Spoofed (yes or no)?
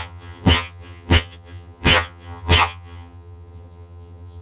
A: yes